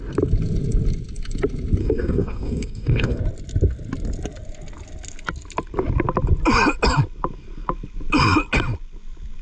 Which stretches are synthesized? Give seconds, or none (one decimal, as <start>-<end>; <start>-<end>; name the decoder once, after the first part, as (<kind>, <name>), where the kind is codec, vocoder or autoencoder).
1.8-3.2 (codec, DAC)